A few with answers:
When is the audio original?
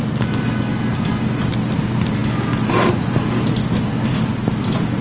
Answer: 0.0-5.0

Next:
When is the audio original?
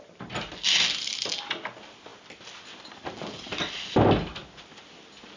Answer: 0.0-5.4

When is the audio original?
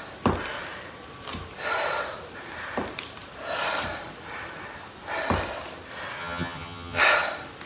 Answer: 0.0-6.2; 7.0-7.7